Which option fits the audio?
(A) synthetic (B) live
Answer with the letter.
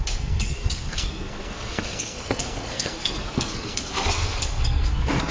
A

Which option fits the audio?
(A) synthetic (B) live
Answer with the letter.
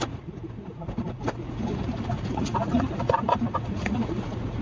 A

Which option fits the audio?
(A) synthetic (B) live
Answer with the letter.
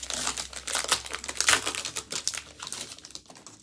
B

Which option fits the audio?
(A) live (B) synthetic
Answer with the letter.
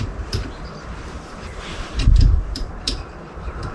B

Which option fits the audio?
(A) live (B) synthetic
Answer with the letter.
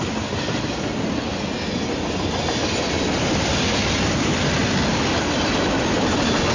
A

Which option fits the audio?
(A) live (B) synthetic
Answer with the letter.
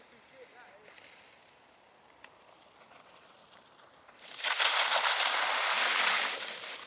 B